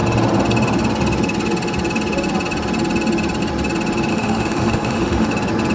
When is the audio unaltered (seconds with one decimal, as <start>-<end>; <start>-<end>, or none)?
0.0-4.1; 5.3-5.7